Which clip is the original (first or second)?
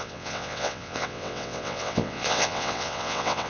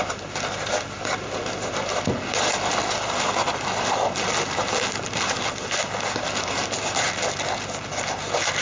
second